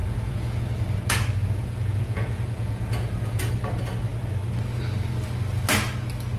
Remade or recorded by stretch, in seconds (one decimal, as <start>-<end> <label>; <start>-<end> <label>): 0.0-0.6 remade; 0.6-1.4 recorded; 1.4-3.5 remade; 3.5-6.4 recorded